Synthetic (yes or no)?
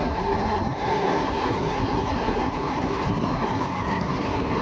yes